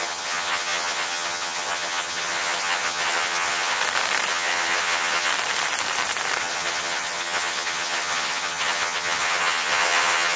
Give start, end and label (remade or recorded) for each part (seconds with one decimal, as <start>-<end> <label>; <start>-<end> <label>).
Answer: 0.0-3.8 remade; 3.8-4.3 recorded; 4.3-5.3 remade; 5.3-6.4 recorded; 6.4-10.4 remade